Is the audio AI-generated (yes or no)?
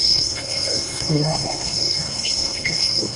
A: yes